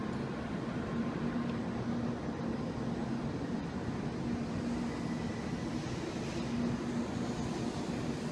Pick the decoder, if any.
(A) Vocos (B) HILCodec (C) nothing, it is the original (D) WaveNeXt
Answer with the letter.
C